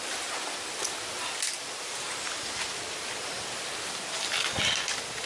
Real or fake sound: real